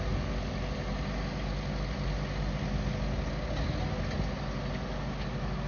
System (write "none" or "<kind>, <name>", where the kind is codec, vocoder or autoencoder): none